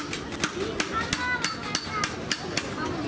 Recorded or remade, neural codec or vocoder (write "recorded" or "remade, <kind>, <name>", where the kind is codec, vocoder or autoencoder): recorded